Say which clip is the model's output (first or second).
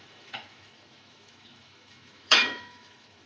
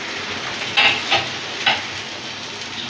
first